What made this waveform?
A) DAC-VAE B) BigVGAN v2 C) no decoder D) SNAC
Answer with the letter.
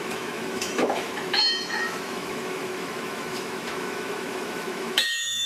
A